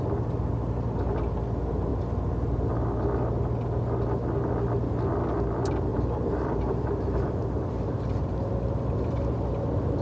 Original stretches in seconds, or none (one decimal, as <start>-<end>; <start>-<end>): 0.0-5.9; 8.5-10.0